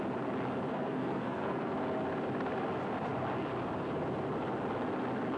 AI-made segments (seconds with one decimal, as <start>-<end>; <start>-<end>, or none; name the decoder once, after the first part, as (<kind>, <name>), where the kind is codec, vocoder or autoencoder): 0.7-1.7 (codec, SNAC)